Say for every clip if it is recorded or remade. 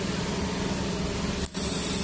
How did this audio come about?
recorded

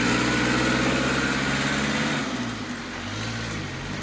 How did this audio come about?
recorded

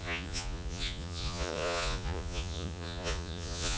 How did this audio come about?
remade